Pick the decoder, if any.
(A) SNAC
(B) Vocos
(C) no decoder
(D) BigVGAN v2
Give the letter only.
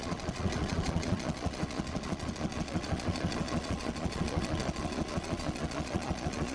B